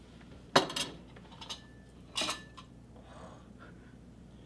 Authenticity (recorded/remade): recorded